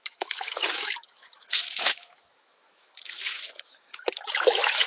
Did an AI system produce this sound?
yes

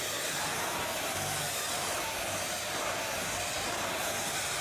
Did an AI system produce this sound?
no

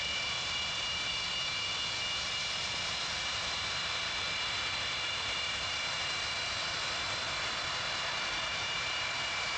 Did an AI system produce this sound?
no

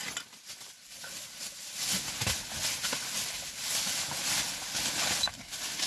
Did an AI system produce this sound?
no